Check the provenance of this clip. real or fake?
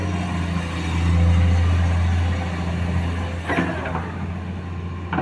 real